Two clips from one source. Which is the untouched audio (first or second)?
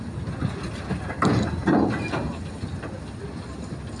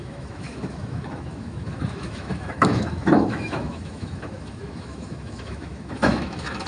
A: first